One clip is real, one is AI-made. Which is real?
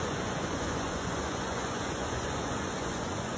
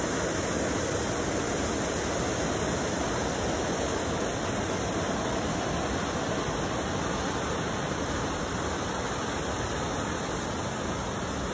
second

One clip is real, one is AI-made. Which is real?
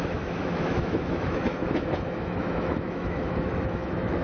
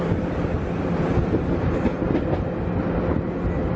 second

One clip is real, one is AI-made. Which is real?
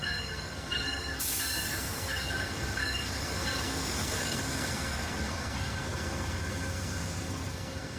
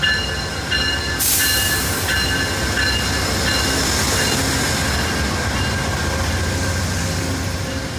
second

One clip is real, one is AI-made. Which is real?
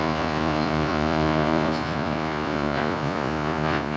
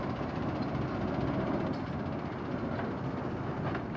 second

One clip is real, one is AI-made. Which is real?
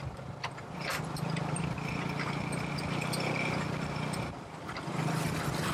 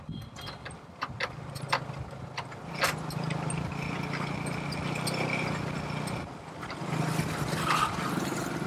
second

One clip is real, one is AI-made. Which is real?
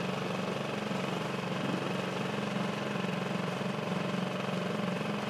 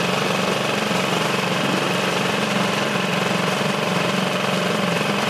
first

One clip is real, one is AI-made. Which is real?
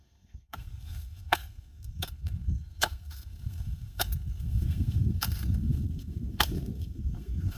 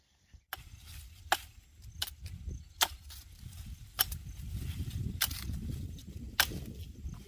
second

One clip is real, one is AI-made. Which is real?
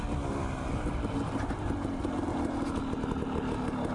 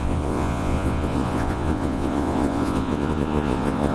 first